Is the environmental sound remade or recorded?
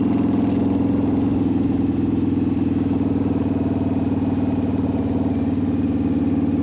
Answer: recorded